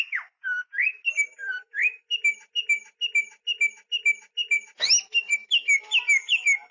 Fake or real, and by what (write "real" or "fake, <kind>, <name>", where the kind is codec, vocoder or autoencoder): real